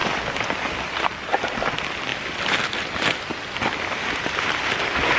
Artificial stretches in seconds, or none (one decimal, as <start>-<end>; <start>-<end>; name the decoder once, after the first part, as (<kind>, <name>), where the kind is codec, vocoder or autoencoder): 2.1-3.3 (vocoder, BigVGAN v2)